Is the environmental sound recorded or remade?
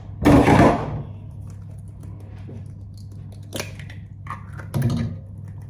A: recorded